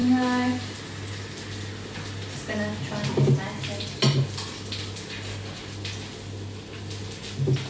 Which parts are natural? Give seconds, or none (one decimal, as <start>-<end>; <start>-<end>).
0.0-7.7